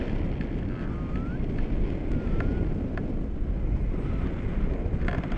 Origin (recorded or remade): recorded